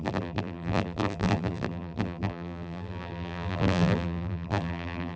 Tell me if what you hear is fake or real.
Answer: fake